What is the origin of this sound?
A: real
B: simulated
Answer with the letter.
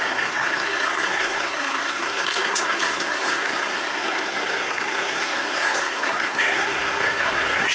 B